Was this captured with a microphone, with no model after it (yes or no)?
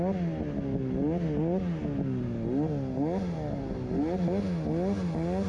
yes